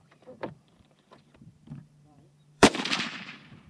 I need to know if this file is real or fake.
fake